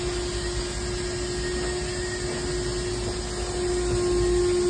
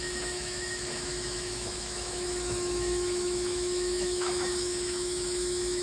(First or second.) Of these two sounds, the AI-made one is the second